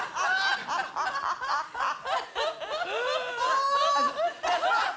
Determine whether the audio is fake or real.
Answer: real